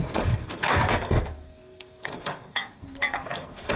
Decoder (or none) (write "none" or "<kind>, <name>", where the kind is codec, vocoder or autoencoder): codec, SNAC